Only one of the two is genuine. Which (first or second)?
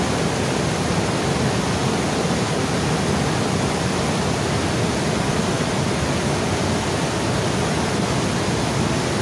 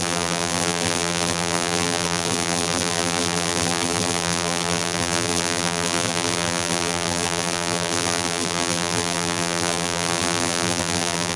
first